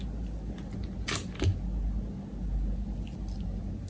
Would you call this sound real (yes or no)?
yes